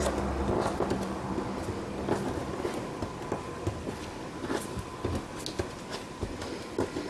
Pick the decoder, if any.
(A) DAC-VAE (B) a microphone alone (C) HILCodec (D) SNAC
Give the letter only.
B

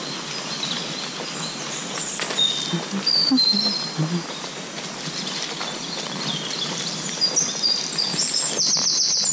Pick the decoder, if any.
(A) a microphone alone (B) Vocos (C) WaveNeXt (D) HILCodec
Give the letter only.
A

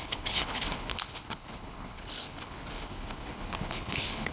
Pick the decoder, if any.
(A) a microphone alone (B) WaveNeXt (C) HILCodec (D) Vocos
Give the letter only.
C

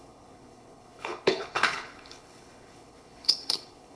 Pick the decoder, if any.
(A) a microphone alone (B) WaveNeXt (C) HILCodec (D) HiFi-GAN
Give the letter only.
C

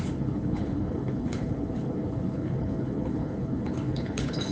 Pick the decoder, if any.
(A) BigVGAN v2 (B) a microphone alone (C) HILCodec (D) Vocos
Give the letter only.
C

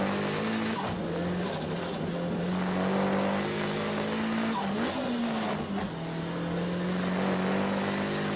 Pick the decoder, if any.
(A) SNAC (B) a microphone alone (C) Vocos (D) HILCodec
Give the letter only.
B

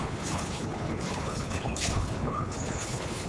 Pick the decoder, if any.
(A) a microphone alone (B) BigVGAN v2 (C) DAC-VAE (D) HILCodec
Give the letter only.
D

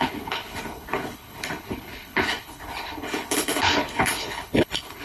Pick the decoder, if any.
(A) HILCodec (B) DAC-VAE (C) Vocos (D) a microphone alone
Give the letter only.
A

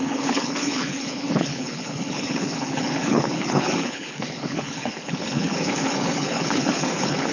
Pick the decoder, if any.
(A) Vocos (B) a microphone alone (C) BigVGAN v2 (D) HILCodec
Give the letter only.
D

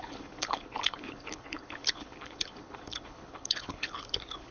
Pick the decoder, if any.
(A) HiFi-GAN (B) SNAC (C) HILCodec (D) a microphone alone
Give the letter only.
C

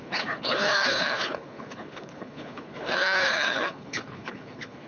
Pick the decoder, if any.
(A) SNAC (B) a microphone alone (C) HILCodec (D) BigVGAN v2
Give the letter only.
C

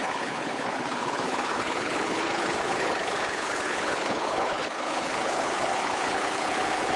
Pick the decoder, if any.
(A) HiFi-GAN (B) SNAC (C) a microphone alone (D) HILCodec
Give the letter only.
D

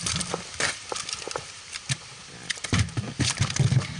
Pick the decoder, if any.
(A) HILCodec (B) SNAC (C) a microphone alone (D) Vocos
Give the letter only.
C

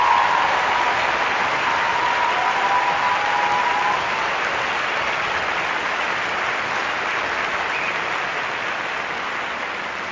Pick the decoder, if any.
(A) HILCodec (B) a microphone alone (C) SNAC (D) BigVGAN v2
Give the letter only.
B